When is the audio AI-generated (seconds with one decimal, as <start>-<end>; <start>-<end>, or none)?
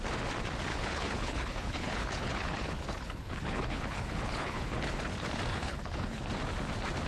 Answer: 0.7-5.0; 5.5-6.2